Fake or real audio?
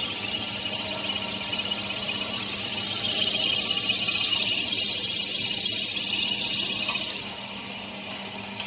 real